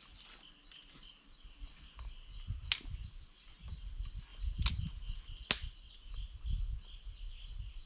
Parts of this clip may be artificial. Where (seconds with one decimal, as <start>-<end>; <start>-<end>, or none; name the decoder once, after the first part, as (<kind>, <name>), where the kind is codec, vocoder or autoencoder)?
none